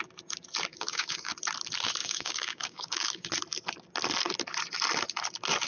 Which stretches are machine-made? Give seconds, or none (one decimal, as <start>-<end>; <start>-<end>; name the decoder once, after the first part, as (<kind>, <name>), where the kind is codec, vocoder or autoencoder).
0.7-1.3 (codec, DAC); 2.0-3.3